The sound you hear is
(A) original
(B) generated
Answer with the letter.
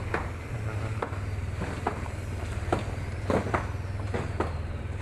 B